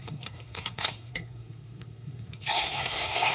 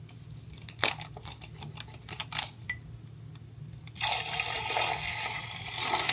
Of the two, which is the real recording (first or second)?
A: second